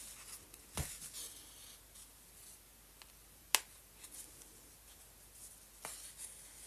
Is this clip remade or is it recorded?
recorded